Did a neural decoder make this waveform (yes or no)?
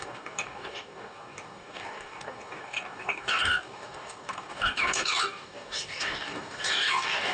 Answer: yes